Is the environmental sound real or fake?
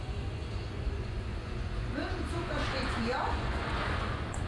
fake